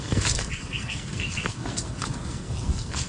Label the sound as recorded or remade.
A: remade